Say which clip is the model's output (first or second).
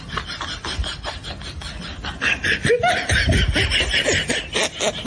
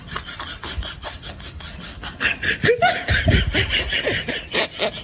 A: second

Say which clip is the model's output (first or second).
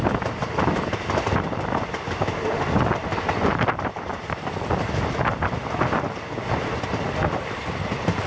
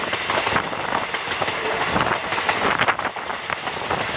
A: first